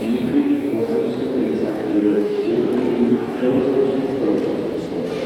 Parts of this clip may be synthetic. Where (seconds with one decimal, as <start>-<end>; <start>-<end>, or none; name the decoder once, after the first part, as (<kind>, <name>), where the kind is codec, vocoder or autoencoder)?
0.0-1.1 (codec, DAC); 1.7-2.5; 3.1-3.6